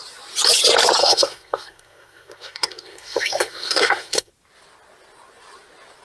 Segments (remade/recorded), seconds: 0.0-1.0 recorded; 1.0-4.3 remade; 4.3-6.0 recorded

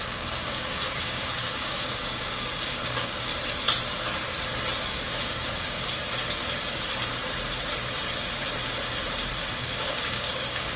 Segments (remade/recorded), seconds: 0.0-3.3 remade; 3.3-4.8 recorded; 4.8-6.0 remade; 6.0-9.6 recorded; 9.6-10.8 remade

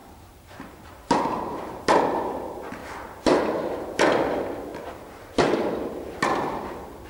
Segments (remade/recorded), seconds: 0.0-2.0 remade; 2.0-4.7 recorded; 4.7-5.2 remade; 5.2-7.1 recorded

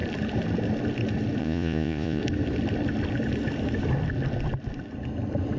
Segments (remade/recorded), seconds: 0.0-1.4 recorded; 1.4-2.2 remade; 2.2-5.6 recorded

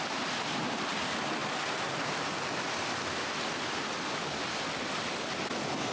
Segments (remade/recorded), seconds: 0.0-5.9 recorded

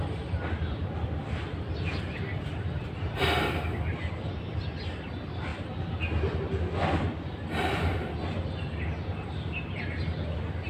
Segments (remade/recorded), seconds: 0.0-10.7 recorded